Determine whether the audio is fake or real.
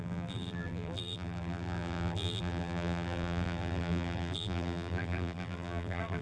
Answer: fake